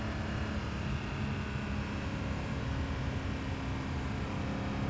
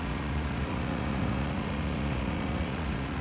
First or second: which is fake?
second